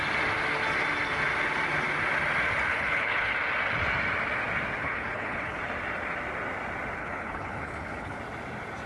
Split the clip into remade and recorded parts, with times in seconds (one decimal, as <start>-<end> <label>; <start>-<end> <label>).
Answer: 0.0-2.7 recorded; 2.7-3.3 remade; 3.3-4.8 recorded; 4.8-5.6 remade; 5.6-7.0 recorded; 7.0-8.2 remade; 8.2-8.9 recorded